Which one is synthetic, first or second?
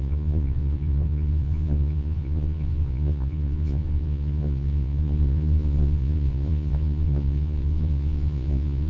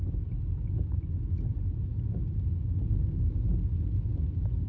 first